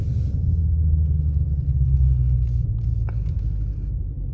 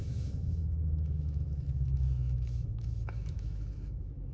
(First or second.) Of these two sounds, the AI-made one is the second